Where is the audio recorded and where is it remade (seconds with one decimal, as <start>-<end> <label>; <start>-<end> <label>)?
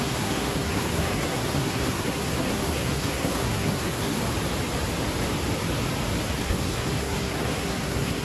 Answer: 0.0-4.2 remade; 4.2-6.4 recorded; 6.4-8.2 remade